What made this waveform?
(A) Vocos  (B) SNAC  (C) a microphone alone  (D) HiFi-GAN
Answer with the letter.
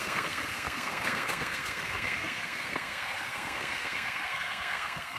B